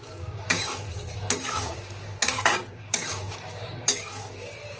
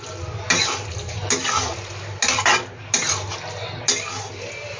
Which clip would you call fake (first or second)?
first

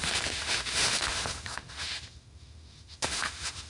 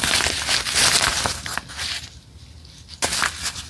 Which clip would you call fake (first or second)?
first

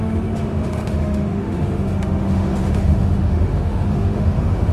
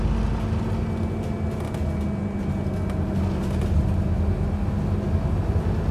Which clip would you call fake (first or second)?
first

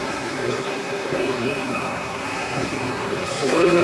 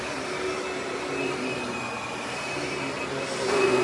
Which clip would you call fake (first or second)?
first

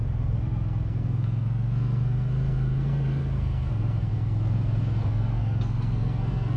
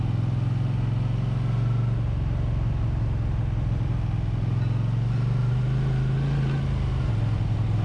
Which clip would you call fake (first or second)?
first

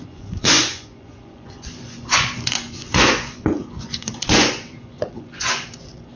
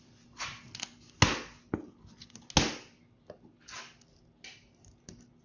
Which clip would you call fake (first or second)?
first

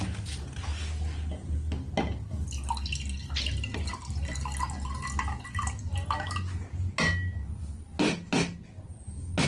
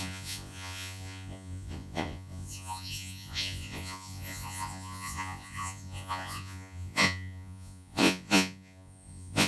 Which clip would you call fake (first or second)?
second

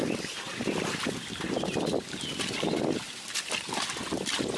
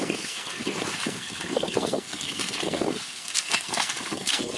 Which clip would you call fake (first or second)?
second